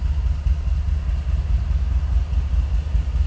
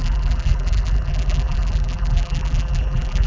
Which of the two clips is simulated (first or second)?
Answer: second